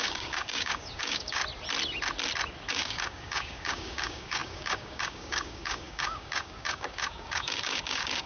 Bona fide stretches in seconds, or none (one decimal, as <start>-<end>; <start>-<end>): 1.4-2.7